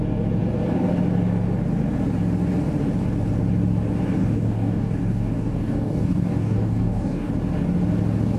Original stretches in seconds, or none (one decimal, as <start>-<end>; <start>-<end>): 0.0-4.2; 7.3-8.4